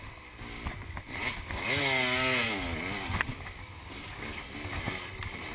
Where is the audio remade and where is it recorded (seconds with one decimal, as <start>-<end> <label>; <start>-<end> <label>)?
0.0-3.3 recorded; 3.3-4.4 remade; 4.4-5.5 recorded